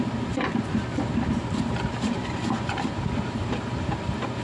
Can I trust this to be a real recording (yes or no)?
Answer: no